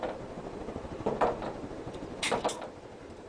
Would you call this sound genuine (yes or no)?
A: no